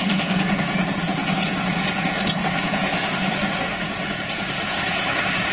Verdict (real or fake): fake